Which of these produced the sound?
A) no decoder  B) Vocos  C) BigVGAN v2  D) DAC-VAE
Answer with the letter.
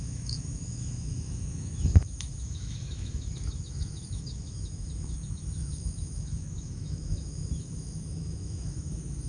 D